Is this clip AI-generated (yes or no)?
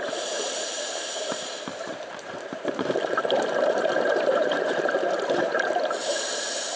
yes